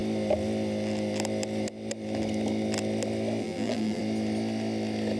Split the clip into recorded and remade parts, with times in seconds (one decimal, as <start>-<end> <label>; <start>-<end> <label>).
0.0-3.4 recorded; 3.4-4.0 remade; 4.0-5.2 recorded